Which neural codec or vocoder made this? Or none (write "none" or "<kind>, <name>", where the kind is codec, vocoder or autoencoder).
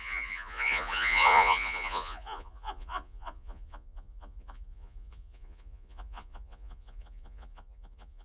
vocoder, Vocos